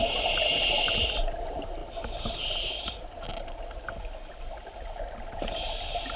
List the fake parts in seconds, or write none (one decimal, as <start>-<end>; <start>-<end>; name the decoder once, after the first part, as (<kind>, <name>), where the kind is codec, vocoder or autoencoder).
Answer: none

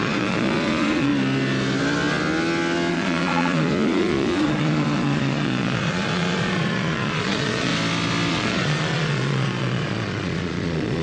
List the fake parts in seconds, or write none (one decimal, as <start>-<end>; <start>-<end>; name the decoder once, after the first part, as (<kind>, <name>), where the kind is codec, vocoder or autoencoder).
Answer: 0.0-1.1 (vocoder, Vocos); 2.9-7.7; 8.3-11.0

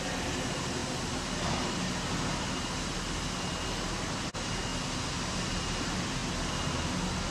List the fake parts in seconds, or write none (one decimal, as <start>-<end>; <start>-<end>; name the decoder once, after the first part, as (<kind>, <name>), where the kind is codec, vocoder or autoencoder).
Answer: none

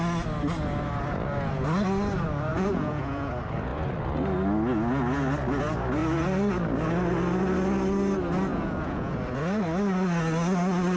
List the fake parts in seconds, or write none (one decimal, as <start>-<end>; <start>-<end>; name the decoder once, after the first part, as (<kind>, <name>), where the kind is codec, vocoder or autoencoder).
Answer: 2.5-3.3 (vocoder, Vocos); 8.5-9.1